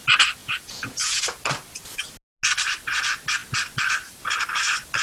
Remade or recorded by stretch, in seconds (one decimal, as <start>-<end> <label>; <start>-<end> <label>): 0.0-0.4 recorded; 0.4-1.2 remade; 1.2-5.0 recorded